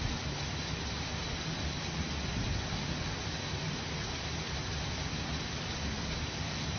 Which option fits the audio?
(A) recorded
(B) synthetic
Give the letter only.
A